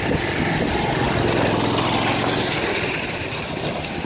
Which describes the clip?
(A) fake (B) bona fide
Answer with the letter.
B